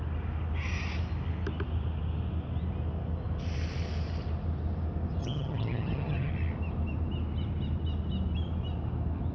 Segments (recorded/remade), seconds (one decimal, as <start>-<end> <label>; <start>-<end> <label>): 0.0-5.2 recorded; 5.2-6.3 remade; 6.3-9.3 recorded